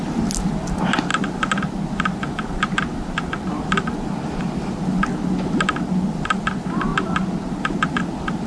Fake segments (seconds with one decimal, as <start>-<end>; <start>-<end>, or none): none